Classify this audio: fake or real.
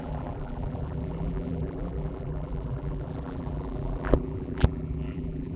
fake